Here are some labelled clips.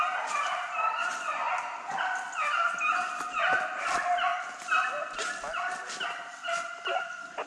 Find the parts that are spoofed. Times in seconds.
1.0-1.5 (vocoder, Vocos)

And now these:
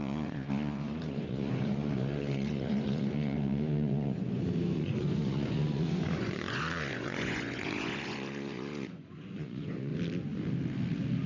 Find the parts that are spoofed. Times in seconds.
0.0-9.9 (vocoder, Vocos)

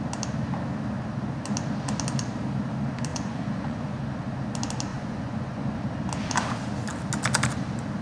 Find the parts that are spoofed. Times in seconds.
3.1-4.0 (vocoder, Vocos); 4.9-5.8

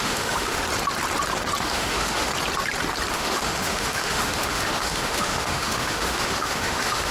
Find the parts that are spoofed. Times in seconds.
0.0-0.6 (autoencoder, DAC-VAE); 1.6-2.3; 3.1-7.1